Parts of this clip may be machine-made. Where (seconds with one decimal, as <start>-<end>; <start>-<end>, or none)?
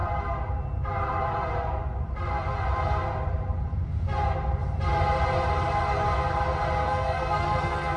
6.8-8.0